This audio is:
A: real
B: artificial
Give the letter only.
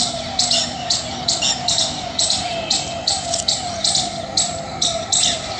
A